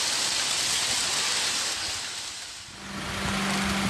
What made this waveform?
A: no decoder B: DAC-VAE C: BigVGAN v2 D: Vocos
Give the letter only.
A